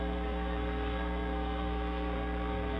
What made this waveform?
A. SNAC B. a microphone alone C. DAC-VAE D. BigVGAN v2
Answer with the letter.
A